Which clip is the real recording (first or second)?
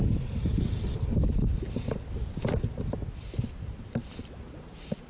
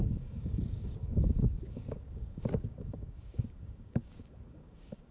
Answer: first